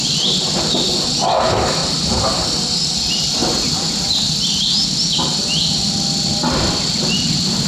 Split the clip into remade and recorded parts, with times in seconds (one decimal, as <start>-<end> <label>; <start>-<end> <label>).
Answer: 0.0-1.8 recorded; 1.8-2.7 remade; 2.7-7.7 recorded

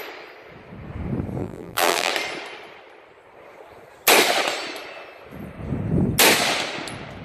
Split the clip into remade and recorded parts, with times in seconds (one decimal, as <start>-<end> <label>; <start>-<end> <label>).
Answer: 0.0-1.4 recorded; 1.4-2.1 remade; 2.1-7.2 recorded

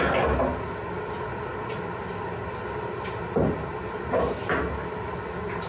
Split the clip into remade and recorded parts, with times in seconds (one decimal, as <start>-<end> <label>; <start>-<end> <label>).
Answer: 0.0-5.7 recorded

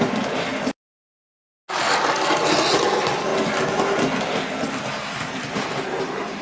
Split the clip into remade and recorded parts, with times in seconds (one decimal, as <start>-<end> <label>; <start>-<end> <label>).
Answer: 0.0-1.6 remade; 1.6-2.4 recorded; 2.4-3.3 remade; 3.3-4.2 recorded; 4.2-6.4 remade

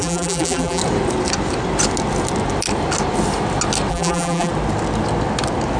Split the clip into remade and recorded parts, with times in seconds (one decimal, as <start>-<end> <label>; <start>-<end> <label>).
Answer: 0.0-0.8 remade; 0.8-3.9 recorded; 3.9-4.5 remade; 4.5-5.8 recorded